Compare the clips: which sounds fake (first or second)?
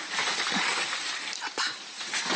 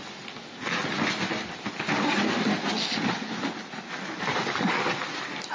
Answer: first